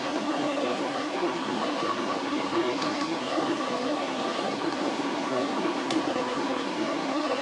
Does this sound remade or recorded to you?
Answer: remade